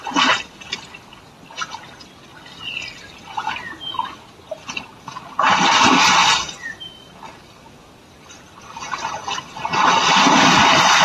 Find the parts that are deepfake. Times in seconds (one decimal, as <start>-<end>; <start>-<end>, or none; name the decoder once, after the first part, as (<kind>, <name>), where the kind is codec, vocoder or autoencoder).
none